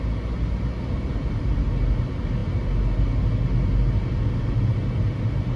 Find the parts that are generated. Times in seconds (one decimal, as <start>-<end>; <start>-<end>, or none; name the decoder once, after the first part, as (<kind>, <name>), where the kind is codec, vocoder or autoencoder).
none